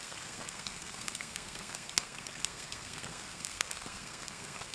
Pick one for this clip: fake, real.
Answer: fake